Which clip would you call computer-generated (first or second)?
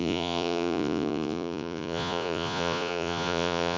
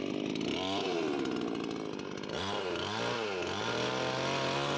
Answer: first